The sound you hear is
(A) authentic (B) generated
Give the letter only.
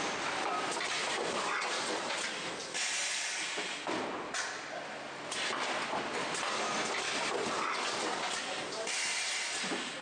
A